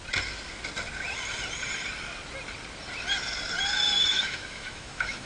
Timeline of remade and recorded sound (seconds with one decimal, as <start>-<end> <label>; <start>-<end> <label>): 0.0-4.1 recorded; 4.1-5.3 remade